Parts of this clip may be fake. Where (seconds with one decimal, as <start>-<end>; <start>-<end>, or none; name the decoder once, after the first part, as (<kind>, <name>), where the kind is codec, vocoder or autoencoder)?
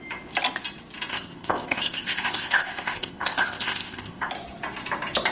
1.1-4.3 (codec, ZipCodec)